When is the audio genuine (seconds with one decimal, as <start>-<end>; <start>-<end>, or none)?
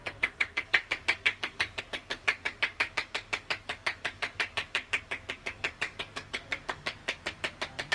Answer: 7.0-7.9